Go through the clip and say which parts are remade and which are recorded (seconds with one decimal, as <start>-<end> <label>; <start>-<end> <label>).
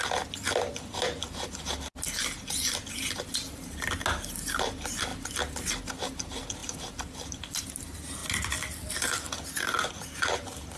0.0-6.6 recorded; 6.6-7.6 remade; 7.6-10.8 recorded